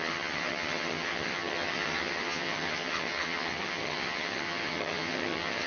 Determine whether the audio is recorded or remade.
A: remade